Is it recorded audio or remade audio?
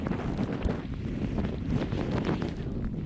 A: recorded